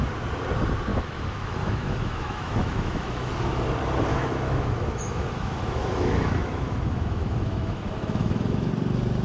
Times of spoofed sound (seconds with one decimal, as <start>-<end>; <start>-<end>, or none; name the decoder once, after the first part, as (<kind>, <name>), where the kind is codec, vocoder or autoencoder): 0.9-3.3 (autoencoder, DAC-VAE); 4.1-8.7